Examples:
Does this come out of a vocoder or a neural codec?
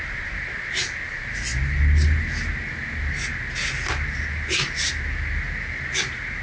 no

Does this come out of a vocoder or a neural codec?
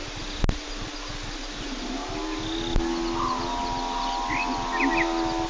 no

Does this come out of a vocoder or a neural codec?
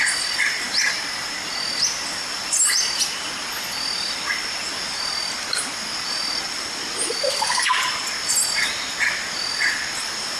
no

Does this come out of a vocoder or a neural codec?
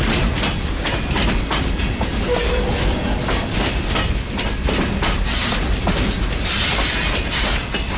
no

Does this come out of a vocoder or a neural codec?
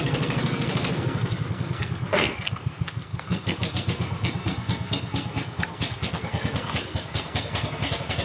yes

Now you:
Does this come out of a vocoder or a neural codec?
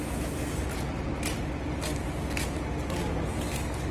no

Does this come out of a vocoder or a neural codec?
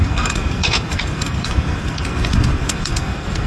yes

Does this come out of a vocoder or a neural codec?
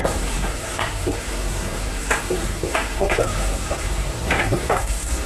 yes